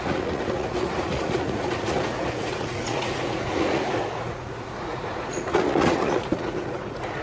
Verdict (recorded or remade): remade